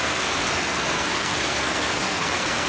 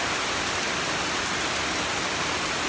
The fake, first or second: first